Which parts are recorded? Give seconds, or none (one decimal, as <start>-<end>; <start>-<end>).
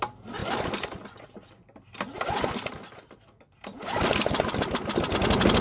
0.0-5.6